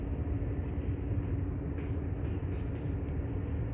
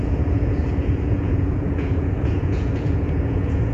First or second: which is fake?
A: second